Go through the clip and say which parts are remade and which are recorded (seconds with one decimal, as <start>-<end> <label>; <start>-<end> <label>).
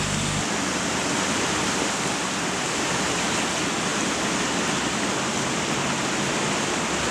0.0-7.1 recorded